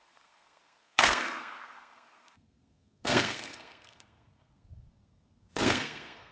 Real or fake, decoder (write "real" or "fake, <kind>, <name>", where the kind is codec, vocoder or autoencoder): fake, codec, SNAC